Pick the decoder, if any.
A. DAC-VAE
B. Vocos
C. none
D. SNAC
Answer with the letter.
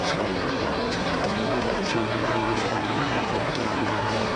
D